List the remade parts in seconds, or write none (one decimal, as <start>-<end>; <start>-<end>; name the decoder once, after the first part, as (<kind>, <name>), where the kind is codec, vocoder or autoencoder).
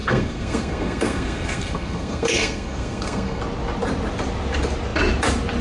0.0-3.4 (codec, SNAC)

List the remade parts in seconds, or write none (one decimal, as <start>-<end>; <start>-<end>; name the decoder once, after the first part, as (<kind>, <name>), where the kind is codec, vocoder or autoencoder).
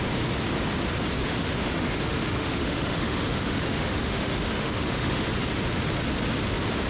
1.2-5.3 (autoencoder, DAC-VAE)